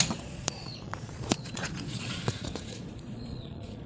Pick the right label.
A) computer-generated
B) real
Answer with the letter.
A